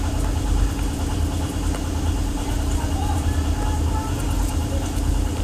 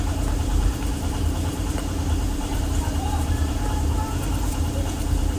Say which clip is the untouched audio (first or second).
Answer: first